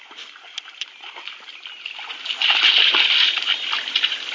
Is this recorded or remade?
recorded